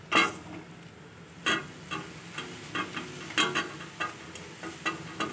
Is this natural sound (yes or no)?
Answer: yes